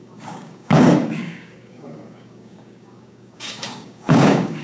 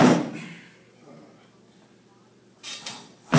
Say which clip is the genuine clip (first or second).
second